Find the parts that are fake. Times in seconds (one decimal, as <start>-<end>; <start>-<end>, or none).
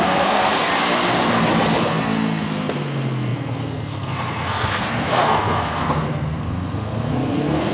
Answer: 0.0-0.7; 1.8-7.7